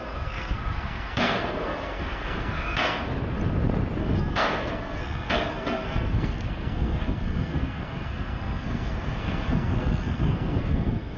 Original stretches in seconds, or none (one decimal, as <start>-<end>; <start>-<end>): 3.1-4.0